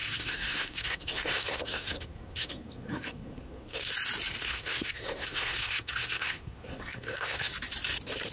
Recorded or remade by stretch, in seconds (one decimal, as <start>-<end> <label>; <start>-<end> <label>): 0.0-3.9 remade; 3.9-4.4 recorded; 4.4-7.5 remade; 7.5-8.3 recorded